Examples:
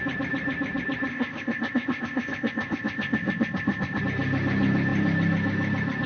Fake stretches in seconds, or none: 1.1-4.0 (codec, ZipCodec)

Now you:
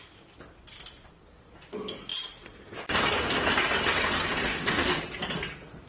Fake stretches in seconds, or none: 4.5-5.0 (autoencoder, DAC-VAE)

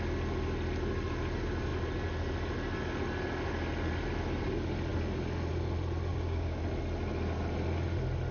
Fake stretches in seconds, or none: 6.1-6.6 (codec, DAC)

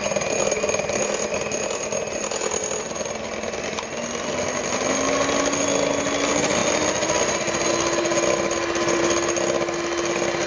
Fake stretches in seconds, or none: none

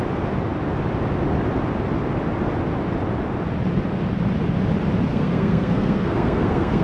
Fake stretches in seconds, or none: 5.1-6.8 (codec, SNAC)

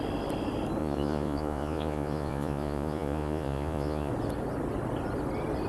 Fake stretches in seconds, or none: 0.8-4.1 (vocoder, Vocos)